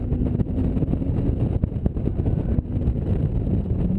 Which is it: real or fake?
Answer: real